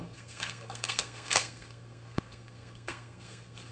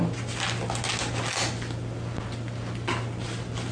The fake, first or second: first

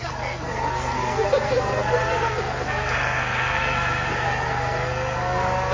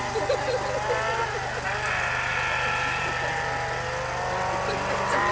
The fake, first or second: first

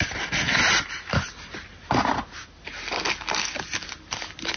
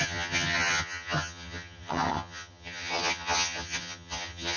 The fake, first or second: second